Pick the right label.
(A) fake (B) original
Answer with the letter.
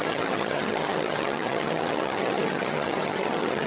A